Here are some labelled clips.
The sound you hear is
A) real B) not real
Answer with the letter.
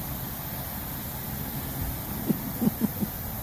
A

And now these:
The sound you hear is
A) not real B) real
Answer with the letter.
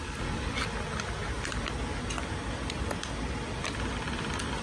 B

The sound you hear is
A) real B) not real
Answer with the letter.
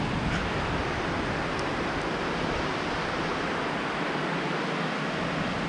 A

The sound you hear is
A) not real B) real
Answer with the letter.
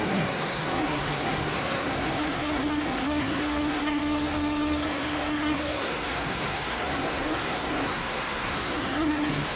A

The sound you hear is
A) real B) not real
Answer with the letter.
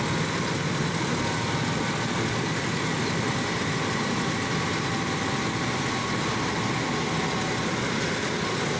A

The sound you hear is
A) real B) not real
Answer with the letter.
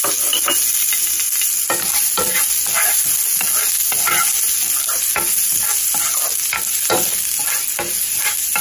A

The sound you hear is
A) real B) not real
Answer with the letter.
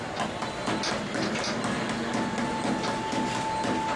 A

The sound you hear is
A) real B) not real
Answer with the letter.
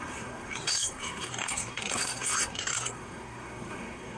B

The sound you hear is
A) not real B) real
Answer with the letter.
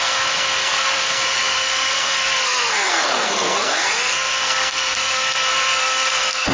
A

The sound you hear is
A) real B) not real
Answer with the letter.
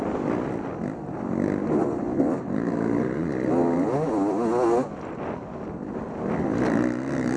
A